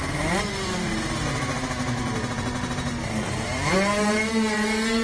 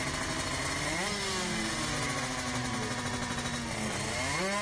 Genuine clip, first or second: second